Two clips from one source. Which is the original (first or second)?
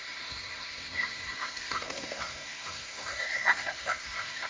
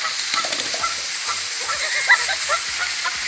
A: second